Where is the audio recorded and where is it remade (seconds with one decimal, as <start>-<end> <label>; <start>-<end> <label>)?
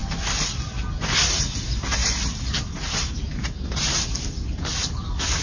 0.0-5.4 recorded